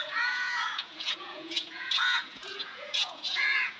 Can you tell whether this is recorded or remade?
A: remade